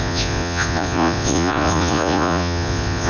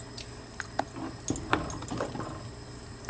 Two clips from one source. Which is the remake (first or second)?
first